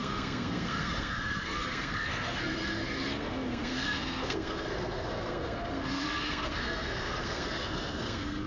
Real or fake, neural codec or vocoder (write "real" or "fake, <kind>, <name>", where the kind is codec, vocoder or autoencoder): fake, codec, SNAC